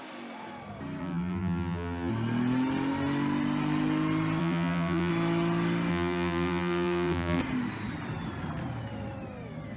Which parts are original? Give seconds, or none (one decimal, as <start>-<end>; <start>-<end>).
0.0-1.0; 2.1-4.4; 5.1-5.9; 7.4-9.8